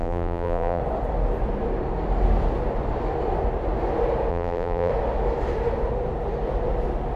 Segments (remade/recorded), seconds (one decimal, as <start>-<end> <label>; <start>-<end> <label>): 0.0-0.8 remade; 0.8-4.3 recorded; 4.3-4.9 remade; 4.9-7.2 recorded